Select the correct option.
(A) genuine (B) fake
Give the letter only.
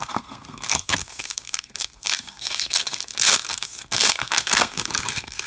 B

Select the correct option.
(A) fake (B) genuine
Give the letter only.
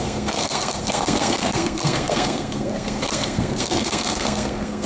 A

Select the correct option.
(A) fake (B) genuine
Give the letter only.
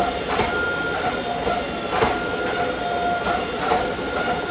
B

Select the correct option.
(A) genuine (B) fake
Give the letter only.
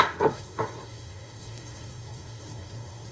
B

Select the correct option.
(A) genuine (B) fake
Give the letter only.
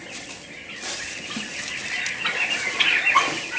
A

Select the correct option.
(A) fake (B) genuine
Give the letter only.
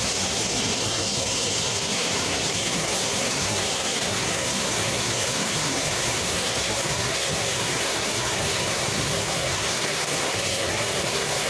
A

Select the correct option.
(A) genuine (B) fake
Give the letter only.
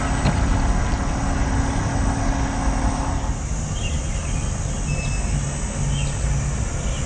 A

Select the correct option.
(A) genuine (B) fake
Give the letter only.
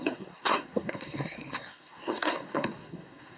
B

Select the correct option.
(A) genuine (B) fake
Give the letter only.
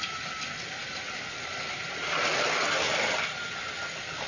A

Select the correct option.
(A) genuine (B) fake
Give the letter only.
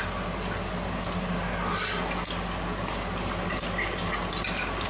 A